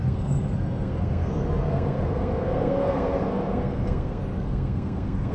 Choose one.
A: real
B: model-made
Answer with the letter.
B